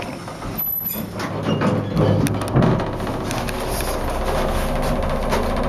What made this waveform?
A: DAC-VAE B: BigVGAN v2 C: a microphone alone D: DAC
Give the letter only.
C